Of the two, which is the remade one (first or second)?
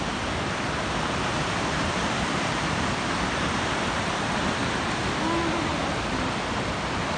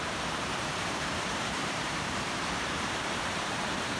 second